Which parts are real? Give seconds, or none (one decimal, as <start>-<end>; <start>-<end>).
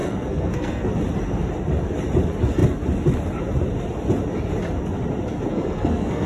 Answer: 0.9-5.5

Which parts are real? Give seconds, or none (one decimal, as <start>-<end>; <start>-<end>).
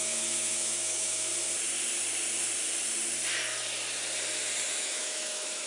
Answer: 1.3-4.7